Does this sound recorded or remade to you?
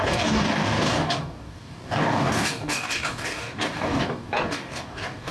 remade